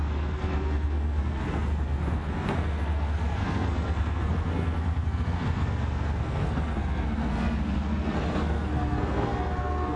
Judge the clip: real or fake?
fake